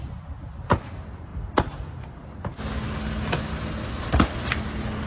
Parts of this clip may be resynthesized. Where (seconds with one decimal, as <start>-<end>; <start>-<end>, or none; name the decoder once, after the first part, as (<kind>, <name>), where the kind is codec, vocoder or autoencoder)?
none